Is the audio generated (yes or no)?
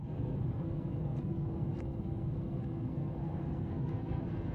yes